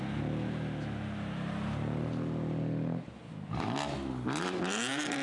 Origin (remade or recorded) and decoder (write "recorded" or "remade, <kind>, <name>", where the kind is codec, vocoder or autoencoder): recorded